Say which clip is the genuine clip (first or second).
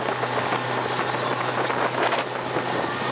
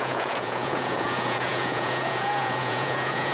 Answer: first